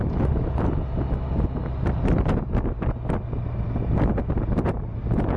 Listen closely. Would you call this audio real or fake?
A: real